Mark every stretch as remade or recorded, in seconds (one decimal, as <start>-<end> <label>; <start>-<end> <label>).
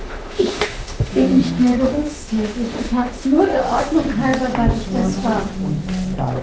0.0-3.8 remade; 3.8-6.4 recorded